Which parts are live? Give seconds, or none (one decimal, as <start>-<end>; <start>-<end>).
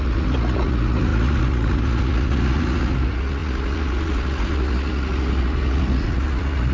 none